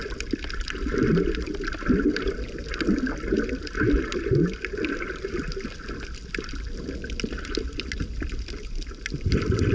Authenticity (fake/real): real